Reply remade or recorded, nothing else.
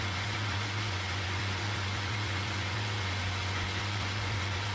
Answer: remade